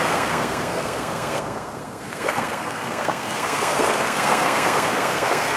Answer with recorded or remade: remade